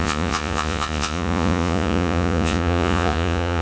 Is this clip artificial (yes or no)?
yes